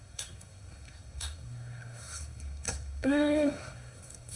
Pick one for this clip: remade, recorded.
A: remade